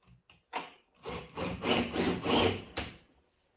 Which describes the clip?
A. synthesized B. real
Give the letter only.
B